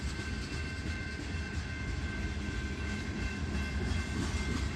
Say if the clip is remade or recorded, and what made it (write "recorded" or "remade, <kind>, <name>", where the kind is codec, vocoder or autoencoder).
recorded